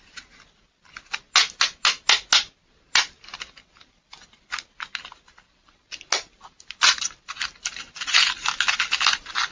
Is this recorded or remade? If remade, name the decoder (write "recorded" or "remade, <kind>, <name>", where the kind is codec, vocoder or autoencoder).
recorded